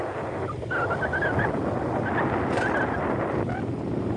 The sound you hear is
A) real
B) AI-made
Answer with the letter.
A